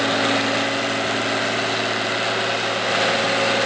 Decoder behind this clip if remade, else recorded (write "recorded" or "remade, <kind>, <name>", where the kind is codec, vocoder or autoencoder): recorded